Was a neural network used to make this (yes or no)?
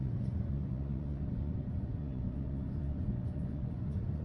yes